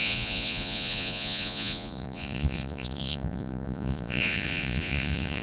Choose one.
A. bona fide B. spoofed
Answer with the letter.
B